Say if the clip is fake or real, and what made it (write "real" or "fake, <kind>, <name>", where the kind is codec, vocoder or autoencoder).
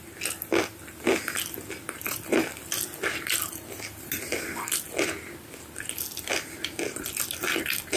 real